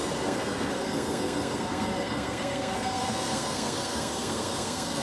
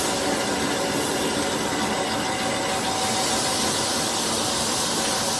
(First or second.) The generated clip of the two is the first